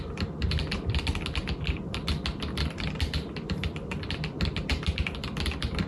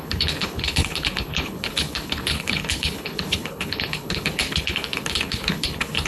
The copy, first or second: second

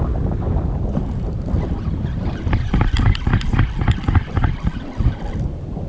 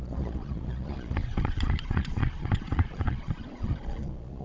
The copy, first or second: second